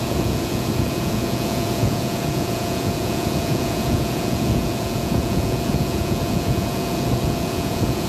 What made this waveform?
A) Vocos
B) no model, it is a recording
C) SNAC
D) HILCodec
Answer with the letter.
A